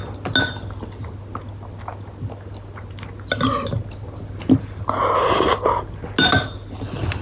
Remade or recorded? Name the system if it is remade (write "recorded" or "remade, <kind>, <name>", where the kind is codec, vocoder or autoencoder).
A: recorded